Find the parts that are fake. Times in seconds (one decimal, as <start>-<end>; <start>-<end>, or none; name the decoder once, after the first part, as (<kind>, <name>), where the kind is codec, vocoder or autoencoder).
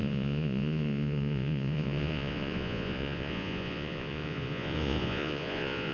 0.0-5.9 (vocoder, Vocos)